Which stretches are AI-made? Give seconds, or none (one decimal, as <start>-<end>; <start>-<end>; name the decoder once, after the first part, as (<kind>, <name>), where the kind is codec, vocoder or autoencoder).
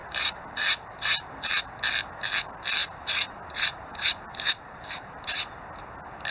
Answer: 0.0-1.6 (vocoder, BigVGAN v2); 2.8-5.8